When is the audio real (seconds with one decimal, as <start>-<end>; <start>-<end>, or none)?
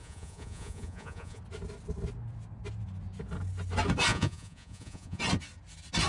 1.4-4.1; 5.2-6.1